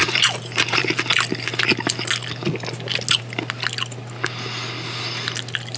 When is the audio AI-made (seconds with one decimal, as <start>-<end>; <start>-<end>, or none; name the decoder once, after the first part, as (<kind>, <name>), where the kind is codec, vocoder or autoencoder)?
0.0-1.0 (vocoder, BigVGAN v2)

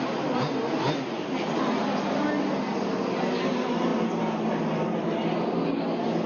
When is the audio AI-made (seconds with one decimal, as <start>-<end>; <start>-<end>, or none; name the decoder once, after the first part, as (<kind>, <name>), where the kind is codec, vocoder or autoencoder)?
none

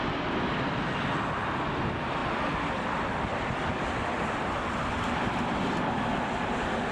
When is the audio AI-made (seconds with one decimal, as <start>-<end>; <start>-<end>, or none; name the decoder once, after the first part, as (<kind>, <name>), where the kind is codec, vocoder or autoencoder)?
3.3-5.9 (vocoder, BigVGAN v2)

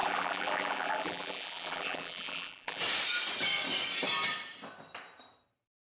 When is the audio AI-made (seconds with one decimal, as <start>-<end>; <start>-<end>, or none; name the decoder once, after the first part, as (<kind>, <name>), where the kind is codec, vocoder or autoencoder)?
0.0-2.8 (vocoder, BigVGAN v2)

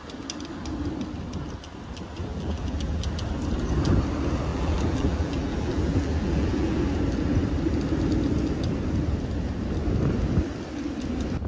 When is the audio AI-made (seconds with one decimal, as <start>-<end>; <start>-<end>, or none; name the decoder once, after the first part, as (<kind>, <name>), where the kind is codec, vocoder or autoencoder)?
2.3-3.0 (vocoder, BigVGAN v2); 4.5-7.0

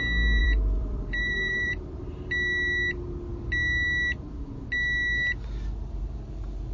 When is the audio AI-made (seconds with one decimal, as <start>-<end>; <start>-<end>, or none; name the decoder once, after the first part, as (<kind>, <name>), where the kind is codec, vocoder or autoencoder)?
0.4-2.0 (vocoder, BigVGAN v2)

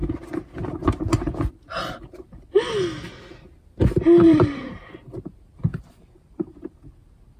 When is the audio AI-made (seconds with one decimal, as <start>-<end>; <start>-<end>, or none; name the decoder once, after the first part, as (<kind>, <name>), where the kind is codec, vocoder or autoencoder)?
3.8-4.8 (vocoder, BigVGAN v2); 5.5-6.9